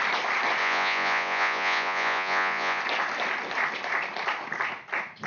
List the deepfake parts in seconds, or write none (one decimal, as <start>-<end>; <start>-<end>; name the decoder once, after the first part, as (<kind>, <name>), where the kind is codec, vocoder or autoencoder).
0.6-2.8 (vocoder, Vocos)

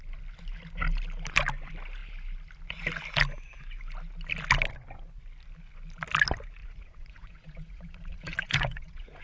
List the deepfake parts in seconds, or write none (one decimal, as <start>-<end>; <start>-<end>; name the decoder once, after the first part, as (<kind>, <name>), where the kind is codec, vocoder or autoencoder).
6.6-9.2 (vocoder, Vocos)

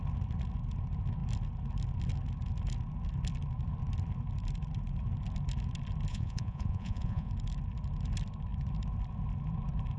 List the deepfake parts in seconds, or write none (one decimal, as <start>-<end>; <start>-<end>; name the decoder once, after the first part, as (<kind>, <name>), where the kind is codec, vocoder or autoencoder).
6.1-7.3 (vocoder, Vocos)